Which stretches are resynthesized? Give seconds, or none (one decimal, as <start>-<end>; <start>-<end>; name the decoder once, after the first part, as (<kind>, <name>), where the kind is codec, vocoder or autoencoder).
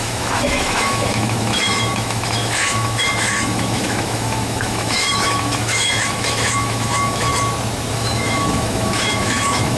0.0-7.3 (autoencoder, DAC-VAE); 7.9-9.8